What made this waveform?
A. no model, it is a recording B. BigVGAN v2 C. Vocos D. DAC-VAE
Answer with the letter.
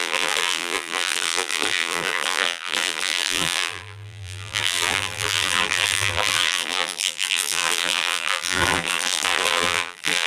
B